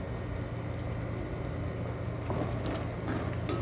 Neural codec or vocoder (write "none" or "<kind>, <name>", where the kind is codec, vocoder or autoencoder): none